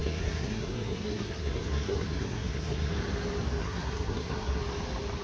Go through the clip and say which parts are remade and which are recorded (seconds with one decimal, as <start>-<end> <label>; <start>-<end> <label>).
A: 0.0-2.9 remade; 2.9-3.6 recorded; 3.6-4.6 remade; 4.6-5.2 recorded